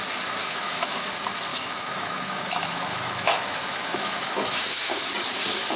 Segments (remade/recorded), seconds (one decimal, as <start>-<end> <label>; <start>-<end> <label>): 0.0-0.4 recorded; 0.4-1.1 remade; 1.1-1.5 recorded; 1.5-5.0 remade; 5.0-5.8 recorded

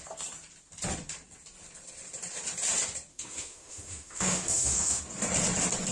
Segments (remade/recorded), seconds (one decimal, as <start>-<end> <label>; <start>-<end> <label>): 0.0-3.1 recorded; 3.1-5.0 remade; 5.0-5.9 recorded

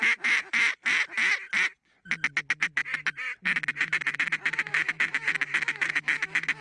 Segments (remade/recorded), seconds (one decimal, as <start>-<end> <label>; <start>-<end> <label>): 0.0-4.7 recorded; 4.7-6.6 remade

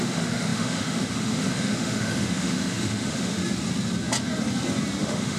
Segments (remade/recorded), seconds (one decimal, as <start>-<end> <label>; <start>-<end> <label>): 0.0-3.4 remade; 3.4-5.0 recorded; 5.0-5.4 remade